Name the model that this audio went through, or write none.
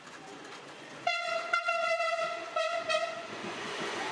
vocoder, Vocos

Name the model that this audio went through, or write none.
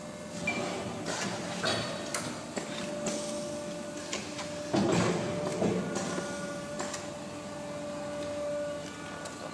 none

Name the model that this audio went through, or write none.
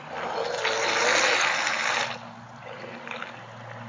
none